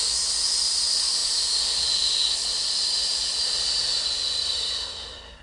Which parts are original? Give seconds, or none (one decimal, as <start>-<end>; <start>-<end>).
0.0-5.4